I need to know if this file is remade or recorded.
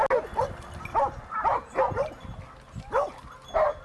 recorded